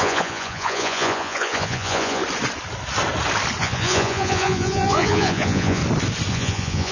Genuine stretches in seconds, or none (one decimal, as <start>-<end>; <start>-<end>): 2.2-3.6; 5.8-6.3